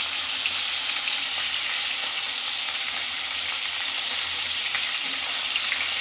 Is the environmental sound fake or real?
fake